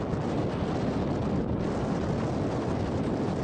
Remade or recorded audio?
recorded